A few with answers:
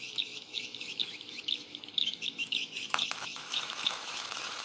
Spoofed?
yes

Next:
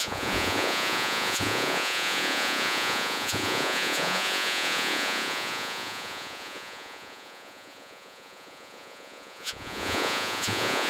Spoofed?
yes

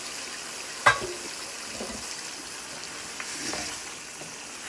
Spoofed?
no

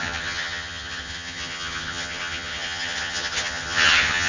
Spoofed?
yes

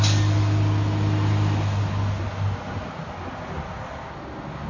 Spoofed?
no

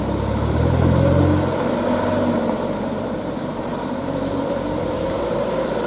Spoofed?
yes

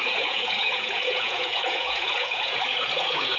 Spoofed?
yes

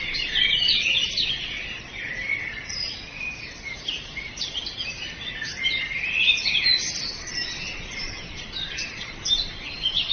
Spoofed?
no